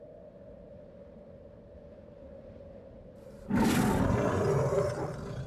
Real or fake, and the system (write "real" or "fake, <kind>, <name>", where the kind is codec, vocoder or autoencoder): real